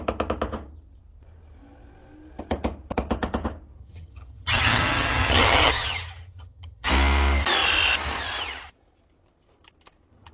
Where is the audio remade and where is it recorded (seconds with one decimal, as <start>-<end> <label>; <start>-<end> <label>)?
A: 0.0-3.8 recorded; 3.8-6.9 remade; 6.9-10.3 recorded